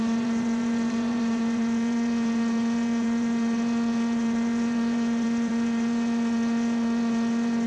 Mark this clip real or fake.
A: fake